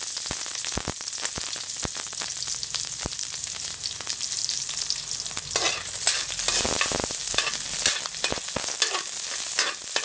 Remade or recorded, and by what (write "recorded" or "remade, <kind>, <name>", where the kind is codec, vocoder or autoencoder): recorded